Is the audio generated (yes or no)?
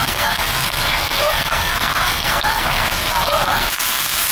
yes